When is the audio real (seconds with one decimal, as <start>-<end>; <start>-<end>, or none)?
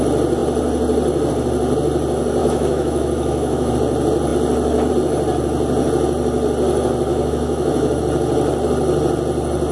0.0-2.4; 3.7-7.1; 8.0-9.7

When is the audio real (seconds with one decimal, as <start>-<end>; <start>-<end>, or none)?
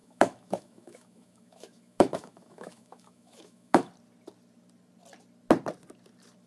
3.9-6.5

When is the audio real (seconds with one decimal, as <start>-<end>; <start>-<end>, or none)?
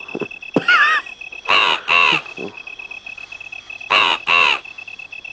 0.0-5.3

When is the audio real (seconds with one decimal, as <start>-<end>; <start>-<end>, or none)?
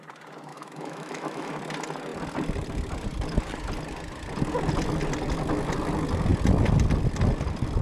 0.0-0.5; 1.5-7.8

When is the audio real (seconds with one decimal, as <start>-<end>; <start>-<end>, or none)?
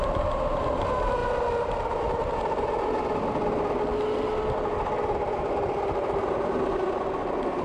0.0-7.6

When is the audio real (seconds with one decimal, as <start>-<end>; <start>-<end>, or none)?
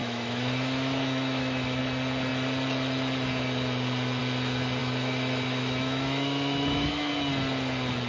1.8-4.8; 7.1-8.1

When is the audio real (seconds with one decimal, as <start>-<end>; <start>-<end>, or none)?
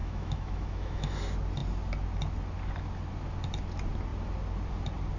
1.1-5.2